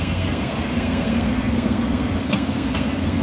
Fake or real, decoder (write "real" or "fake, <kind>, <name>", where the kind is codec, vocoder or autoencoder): fake, codec, SNAC